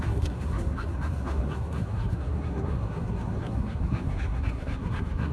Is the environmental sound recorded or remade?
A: remade